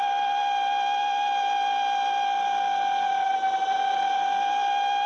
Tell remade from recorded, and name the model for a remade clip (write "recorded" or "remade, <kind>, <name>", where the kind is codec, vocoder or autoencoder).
recorded